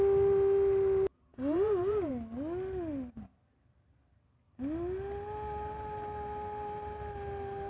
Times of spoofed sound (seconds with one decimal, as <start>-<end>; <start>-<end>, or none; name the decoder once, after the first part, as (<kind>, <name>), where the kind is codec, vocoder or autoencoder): 1.1-2.1 (vocoder, Vocos)